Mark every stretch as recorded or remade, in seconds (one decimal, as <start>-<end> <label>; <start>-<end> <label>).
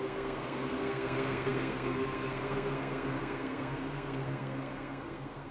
0.0-5.5 remade